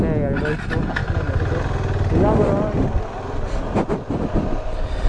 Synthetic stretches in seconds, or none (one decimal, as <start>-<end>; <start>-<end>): none